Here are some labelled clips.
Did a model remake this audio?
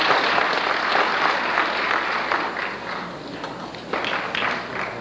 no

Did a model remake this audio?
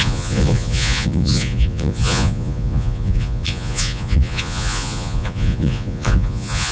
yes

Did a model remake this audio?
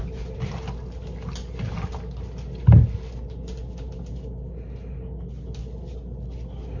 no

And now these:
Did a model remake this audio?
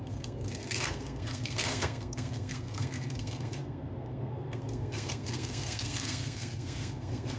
yes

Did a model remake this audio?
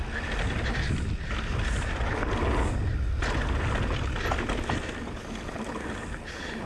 no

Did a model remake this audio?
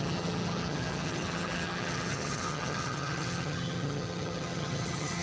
yes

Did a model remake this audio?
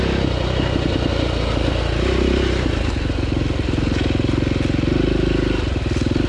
no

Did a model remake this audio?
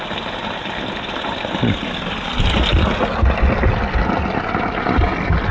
no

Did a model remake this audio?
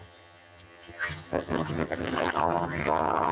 yes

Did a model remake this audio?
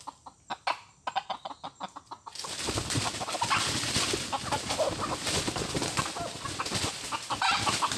no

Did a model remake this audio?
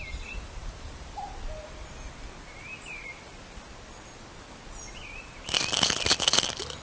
no